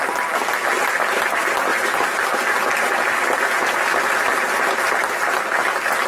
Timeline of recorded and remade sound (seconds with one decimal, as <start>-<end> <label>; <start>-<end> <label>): 0.0-6.1 recorded